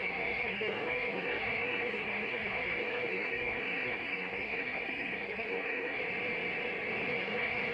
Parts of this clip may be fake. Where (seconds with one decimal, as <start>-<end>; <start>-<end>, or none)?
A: 0.0-6.0; 7.1-7.7